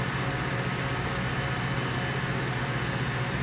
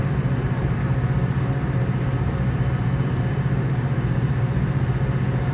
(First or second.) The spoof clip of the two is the second